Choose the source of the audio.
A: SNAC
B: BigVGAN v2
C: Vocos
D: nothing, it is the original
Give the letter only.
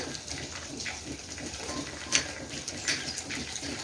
D